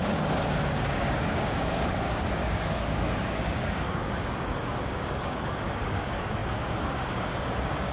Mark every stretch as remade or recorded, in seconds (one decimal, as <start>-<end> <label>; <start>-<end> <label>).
0.0-7.9 remade